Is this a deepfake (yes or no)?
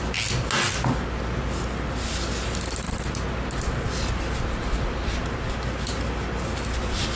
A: no